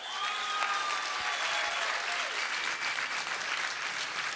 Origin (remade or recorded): recorded